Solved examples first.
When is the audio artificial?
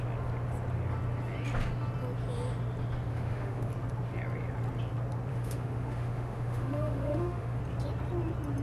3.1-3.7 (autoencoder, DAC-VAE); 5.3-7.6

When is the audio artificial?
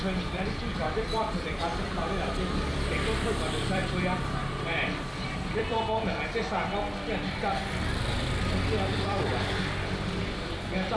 0.0-1.7 (vocoder, BigVGAN v2); 2.7-5.7; 8.9-9.3; 10.2-11.0